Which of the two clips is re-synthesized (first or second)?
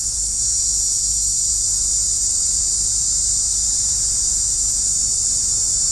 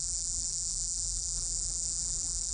second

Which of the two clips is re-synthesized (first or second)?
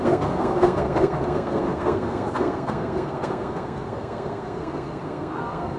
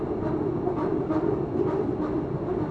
first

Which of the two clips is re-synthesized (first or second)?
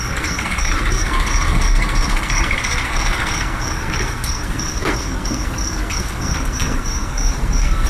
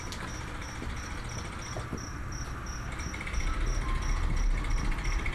first